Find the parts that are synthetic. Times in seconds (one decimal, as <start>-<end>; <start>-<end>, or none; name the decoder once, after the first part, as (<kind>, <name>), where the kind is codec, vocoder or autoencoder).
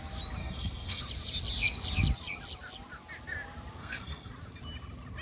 0.4-1.0 (codec, SNAC); 3.8-4.3